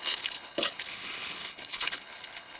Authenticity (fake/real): fake